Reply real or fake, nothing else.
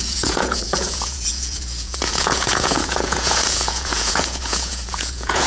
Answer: fake